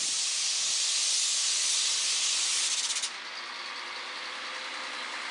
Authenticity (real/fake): real